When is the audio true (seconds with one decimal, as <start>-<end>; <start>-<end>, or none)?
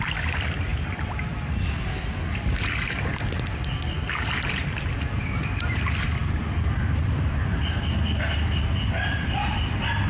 0.7-5.2